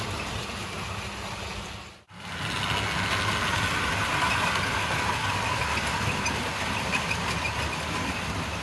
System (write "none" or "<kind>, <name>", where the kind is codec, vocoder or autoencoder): none